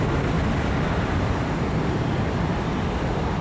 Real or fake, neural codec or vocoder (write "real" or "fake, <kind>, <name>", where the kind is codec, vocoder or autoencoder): real